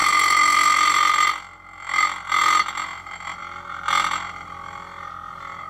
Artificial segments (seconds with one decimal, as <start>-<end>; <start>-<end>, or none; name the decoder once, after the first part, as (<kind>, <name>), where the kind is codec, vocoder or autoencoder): none